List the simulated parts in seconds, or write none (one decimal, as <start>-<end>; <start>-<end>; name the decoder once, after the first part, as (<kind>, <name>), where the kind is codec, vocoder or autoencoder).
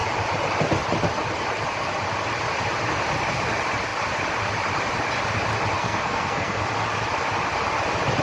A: 5.8-6.6 (codec, SNAC)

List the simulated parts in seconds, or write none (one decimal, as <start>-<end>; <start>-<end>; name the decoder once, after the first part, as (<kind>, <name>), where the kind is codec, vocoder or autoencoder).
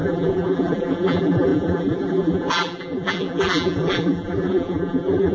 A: 0.0-5.3 (vocoder, BigVGAN v2)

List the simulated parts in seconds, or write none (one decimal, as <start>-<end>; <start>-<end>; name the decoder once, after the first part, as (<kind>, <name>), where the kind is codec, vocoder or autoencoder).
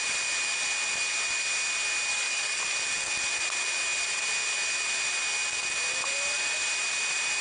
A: 2.1-2.6 (codec, DAC)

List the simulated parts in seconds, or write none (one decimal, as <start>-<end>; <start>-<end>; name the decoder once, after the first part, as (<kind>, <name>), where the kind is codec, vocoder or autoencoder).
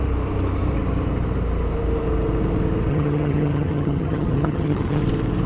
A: 2.9-5.0 (vocoder, HiFi-GAN)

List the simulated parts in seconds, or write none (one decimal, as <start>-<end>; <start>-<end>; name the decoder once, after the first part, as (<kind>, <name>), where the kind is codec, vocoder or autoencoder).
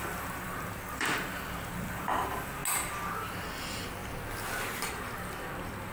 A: 0.0-2.6 (vocoder, BigVGAN v2); 3.1-4.0; 4.9-5.9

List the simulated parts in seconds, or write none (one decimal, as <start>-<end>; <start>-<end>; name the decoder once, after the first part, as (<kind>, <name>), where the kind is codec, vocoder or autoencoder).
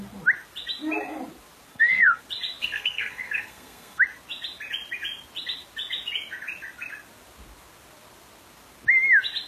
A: 1.7-2.2 (codec, SNAC); 2.6-4.0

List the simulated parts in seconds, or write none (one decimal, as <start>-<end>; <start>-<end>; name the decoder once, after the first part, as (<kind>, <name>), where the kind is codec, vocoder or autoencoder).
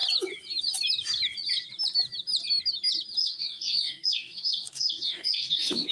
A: 3.2-5.9 (codec, DAC)